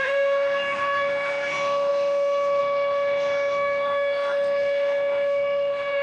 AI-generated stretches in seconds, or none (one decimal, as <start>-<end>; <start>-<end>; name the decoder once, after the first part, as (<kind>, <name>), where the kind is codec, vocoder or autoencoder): 0.0-6.0 (autoencoder, DAC-VAE)